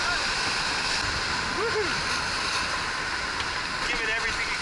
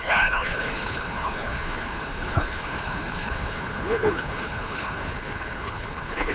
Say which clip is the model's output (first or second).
second